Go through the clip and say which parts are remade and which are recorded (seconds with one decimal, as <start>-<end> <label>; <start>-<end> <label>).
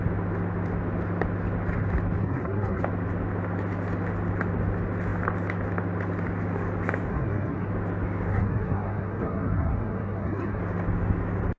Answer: 0.0-2.2 recorded; 2.2-2.8 remade; 2.8-7.1 recorded; 7.1-7.7 remade; 7.7-8.3 recorded; 8.3-10.6 remade; 10.6-11.6 recorded